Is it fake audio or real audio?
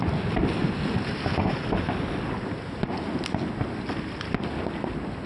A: real